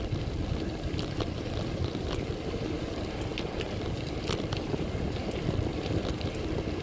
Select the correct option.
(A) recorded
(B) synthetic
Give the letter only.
A